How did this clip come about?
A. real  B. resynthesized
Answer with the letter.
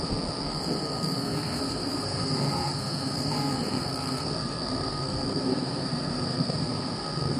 B